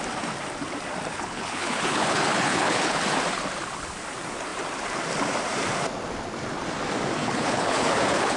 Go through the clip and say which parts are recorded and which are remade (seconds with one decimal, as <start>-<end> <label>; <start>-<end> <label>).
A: 0.0-1.1 recorded; 1.1-3.0 remade; 3.0-7.2 recorded; 7.2-8.4 remade